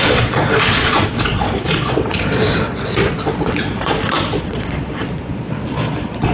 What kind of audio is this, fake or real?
fake